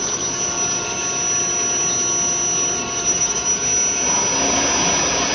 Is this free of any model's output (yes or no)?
yes